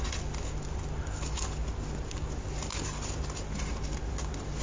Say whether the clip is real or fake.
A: real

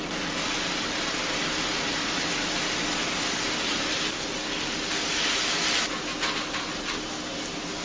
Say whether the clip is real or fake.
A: real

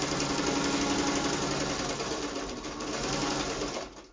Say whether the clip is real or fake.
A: real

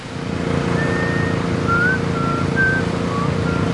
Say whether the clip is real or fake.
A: real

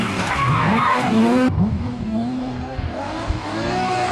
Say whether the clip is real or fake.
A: fake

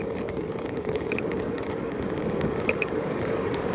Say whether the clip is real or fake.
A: fake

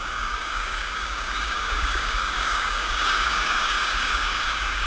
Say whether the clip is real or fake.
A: fake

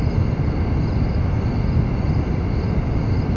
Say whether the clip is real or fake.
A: real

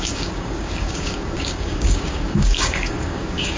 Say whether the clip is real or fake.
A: fake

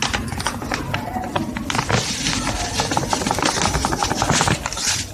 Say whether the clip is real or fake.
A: real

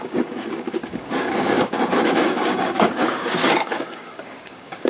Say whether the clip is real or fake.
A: fake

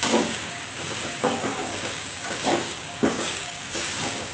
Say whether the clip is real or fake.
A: fake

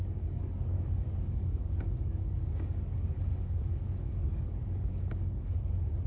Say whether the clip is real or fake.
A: fake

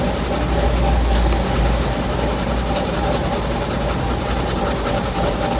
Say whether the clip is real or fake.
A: real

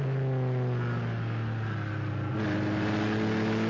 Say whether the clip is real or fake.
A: real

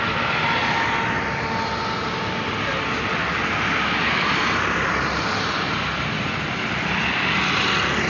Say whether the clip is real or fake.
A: real